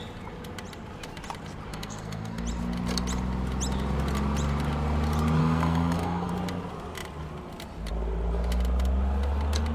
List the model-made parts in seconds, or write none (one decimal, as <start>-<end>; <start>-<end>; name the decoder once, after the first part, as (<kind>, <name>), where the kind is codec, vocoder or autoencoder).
1.7-2.4 (codec, SNAC); 5.4-6.3